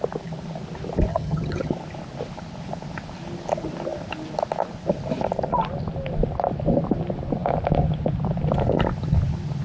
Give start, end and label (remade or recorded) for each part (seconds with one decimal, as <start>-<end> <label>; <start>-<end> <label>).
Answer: 0.0-1.1 recorded; 1.1-1.7 remade; 1.7-9.6 recorded